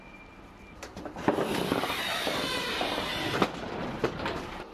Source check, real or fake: fake